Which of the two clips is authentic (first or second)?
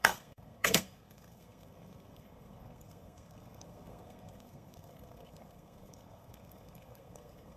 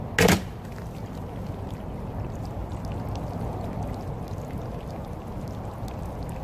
second